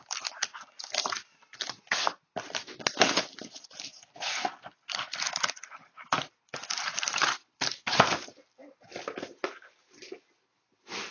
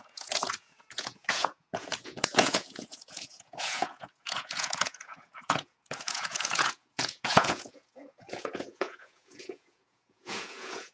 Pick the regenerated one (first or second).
second